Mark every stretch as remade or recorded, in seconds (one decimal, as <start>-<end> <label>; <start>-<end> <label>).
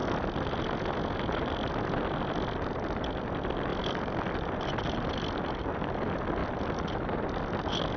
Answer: 0.0-3.7 recorded; 3.7-5.1 remade; 5.1-6.4 recorded; 6.4-7.4 remade; 7.4-8.0 recorded